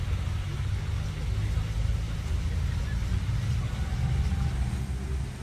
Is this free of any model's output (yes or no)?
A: yes